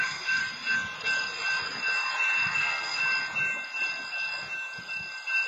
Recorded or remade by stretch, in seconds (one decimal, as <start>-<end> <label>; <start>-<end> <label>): 0.0-0.4 remade; 0.4-2.5 recorded; 2.5-3.0 remade; 3.0-5.5 recorded